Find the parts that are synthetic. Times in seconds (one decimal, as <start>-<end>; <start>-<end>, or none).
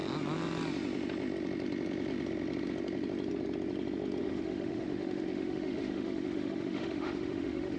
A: 4.2-7.8